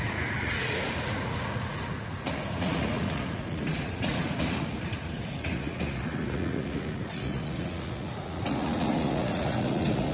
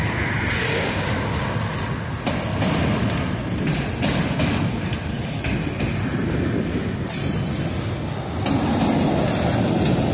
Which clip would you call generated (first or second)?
first